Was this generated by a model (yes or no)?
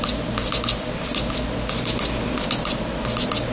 no